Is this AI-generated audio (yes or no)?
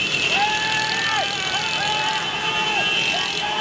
no